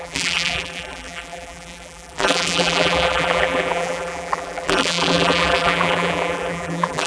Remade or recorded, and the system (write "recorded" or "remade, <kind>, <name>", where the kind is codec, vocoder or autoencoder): remade, vocoder, BigVGAN v2